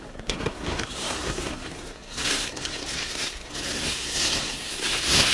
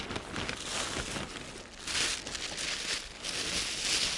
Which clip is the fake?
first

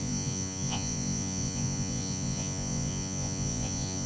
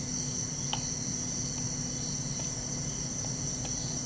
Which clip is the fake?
first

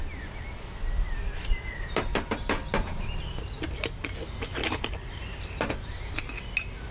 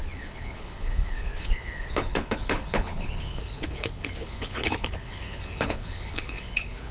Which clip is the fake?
second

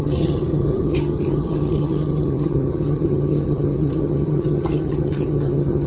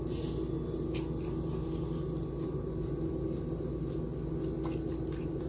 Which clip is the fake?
first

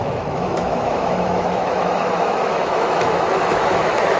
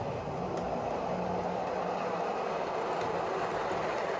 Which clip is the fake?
first